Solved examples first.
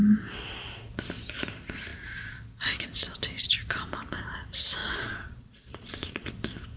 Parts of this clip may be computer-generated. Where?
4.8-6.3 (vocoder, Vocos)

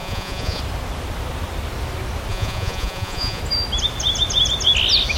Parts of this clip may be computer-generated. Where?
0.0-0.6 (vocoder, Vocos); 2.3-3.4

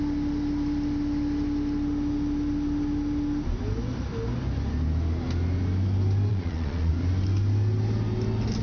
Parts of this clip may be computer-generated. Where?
6.3-6.9 (vocoder, Vocos)

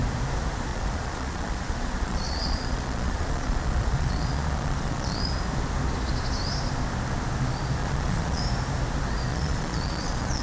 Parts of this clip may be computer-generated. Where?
0.7-5.3 (vocoder, Vocos); 7.8-8.4; 9.3-10.4

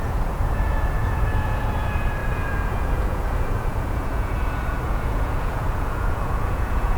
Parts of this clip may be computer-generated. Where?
0.0-7.0 (vocoder, Vocos)